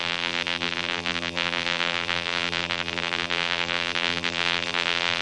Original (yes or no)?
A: no